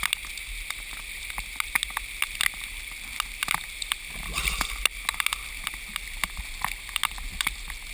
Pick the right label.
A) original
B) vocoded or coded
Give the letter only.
A